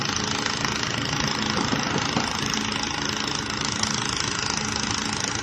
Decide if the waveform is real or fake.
real